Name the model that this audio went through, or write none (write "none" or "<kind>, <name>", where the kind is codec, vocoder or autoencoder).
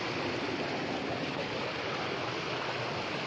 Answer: none